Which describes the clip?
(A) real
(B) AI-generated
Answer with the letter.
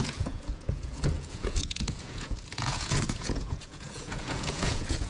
B